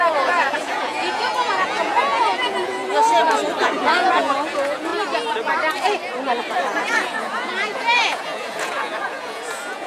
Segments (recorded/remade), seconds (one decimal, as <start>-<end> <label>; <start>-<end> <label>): 0.0-2.8 remade; 2.8-3.6 recorded; 3.6-4.9 remade; 4.9-6.8 recorded; 6.8-9.9 remade